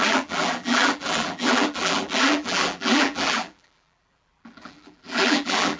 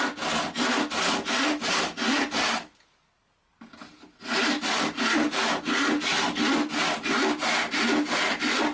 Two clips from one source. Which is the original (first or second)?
second